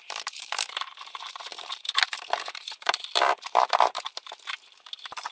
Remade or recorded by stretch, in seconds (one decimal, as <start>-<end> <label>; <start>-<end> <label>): 0.0-5.3 remade